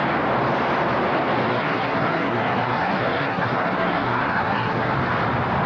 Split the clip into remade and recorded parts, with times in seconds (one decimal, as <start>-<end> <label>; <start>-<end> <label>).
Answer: 0.0-1.5 recorded; 1.5-4.9 remade; 4.9-5.7 recorded